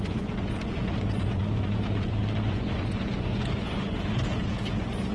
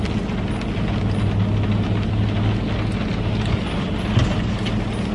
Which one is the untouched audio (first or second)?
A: second